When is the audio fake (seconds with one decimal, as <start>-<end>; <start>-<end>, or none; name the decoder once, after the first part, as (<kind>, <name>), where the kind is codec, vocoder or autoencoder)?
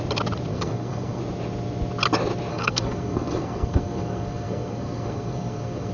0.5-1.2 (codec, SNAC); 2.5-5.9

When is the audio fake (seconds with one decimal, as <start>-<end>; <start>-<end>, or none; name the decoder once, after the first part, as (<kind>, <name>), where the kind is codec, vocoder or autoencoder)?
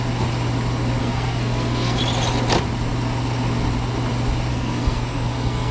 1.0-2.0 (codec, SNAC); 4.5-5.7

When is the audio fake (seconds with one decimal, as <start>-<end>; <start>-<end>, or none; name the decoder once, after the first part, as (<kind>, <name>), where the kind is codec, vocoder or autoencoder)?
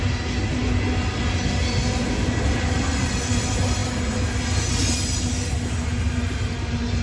none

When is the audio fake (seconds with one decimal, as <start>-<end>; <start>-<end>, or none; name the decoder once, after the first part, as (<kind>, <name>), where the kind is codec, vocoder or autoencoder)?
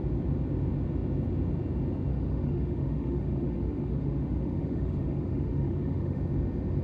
2.1-6.2 (autoencoder, DAC-VAE)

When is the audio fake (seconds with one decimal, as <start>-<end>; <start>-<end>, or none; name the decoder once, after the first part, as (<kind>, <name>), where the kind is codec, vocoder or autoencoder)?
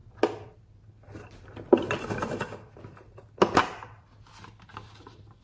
none